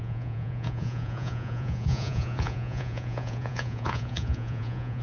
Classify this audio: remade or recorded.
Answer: remade